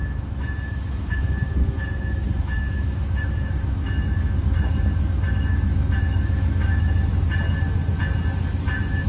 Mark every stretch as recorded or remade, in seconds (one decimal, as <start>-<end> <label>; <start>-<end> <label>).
0.0-7.1 remade; 7.1-8.4 recorded; 8.4-9.1 remade